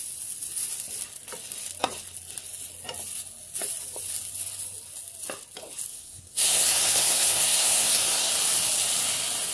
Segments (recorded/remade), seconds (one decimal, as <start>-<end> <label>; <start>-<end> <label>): 0.0-5.9 recorded; 5.9-8.3 remade; 8.3-9.5 recorded